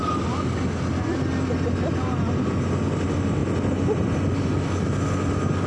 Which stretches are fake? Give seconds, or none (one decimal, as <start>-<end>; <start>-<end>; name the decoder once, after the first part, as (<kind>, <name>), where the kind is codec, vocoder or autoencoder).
none